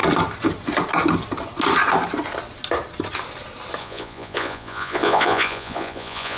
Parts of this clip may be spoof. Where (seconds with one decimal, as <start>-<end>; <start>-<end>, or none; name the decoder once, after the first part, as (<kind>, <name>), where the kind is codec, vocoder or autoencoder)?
3.8-6.4 (vocoder, Vocos)